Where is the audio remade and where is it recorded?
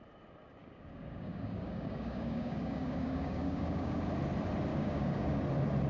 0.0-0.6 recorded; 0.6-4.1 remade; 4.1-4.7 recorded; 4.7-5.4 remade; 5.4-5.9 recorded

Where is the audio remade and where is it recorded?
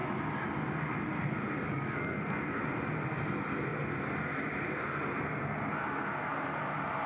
0.0-1.7 recorded; 1.7-2.6 remade; 2.6-7.1 recorded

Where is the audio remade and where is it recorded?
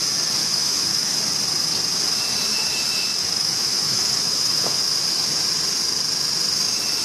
0.0-0.4 recorded; 0.4-1.2 remade; 1.2-3.2 recorded; 3.2-4.8 remade; 4.8-7.0 recorded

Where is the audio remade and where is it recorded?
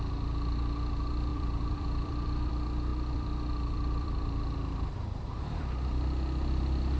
0.0-1.3 recorded; 1.3-2.5 remade; 2.5-2.9 recorded; 2.9-4.4 remade; 4.4-7.0 recorded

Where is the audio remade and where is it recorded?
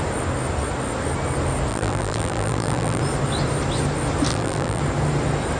0.0-1.7 recorded; 1.7-3.0 remade; 3.0-4.3 recorded; 4.3-4.8 remade; 4.8-5.6 recorded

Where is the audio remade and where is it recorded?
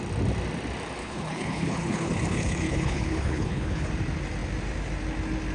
0.0-1.0 recorded; 1.0-3.9 remade; 3.9-5.5 recorded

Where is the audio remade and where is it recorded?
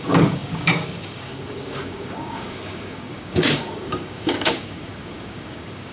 0.0-5.9 remade